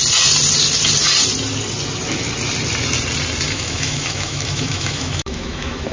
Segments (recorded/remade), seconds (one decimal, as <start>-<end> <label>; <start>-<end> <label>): 0.0-3.5 recorded; 3.5-5.9 remade